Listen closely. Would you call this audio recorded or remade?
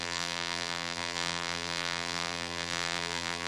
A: remade